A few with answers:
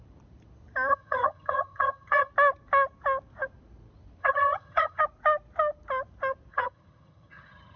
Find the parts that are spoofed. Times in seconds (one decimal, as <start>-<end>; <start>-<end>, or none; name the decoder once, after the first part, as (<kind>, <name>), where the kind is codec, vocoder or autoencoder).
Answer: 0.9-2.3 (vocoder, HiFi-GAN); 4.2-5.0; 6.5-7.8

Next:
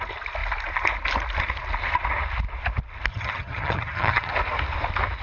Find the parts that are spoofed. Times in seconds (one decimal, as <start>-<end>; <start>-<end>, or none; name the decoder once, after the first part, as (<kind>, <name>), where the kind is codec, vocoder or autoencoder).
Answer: 3.1-4.3 (vocoder, HiFi-GAN)

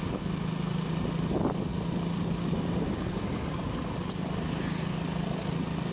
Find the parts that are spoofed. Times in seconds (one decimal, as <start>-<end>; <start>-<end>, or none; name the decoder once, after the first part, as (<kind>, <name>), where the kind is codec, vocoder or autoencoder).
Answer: none

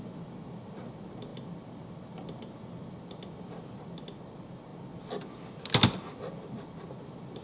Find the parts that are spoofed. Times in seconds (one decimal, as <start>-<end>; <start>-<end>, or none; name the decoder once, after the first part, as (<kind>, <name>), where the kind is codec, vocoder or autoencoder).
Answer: none

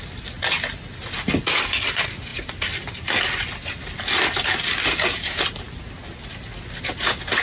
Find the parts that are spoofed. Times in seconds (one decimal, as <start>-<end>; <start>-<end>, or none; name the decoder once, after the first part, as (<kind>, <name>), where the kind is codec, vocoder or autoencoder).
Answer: none

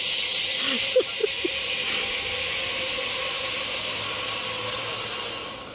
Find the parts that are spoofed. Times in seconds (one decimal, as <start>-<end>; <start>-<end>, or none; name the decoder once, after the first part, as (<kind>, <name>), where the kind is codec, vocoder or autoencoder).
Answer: none

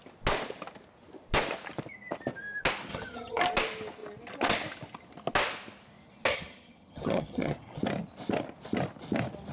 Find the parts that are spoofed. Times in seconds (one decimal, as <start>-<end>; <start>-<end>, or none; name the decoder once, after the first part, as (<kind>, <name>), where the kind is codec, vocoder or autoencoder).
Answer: 2.9-3.4 (vocoder, HiFi-GAN); 6.3-7.8